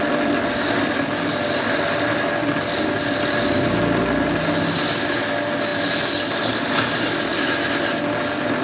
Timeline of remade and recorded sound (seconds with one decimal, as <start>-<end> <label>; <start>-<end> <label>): 0.0-8.6 recorded